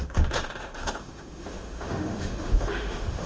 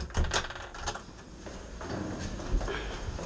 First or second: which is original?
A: second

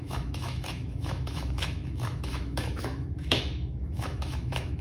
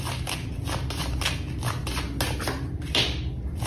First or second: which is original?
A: second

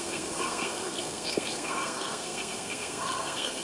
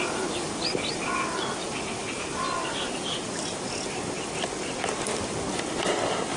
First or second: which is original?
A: second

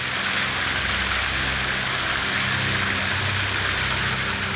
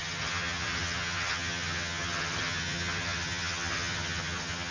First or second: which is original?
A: first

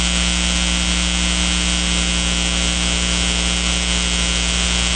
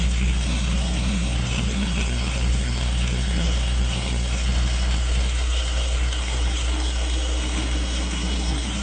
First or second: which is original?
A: first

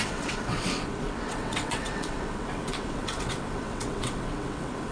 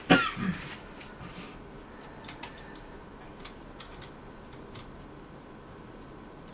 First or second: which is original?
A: second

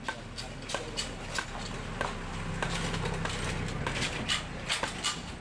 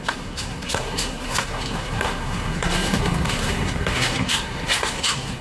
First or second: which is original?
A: first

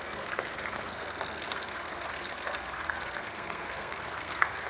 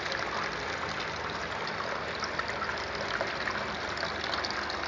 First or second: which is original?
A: second